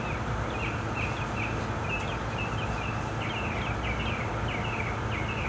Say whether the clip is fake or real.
real